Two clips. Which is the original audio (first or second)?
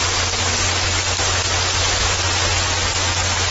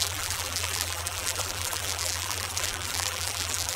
first